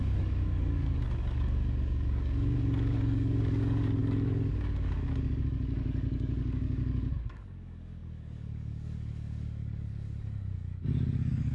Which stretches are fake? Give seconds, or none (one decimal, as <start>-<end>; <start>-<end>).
0.0-11.5